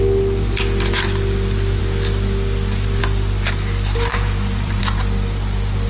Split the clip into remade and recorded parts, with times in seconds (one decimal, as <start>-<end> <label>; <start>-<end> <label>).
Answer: 0.0-4.1 recorded; 4.1-4.8 remade; 4.8-5.9 recorded